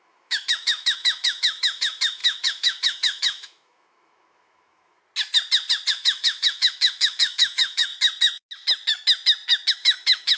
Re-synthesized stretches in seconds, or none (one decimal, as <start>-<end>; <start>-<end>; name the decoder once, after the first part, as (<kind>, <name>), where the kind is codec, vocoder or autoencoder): 0.0-5.0 (autoencoder, DAC-VAE); 5.9-7.9; 9.7-10.4